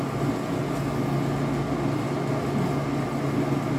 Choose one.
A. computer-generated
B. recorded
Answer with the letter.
B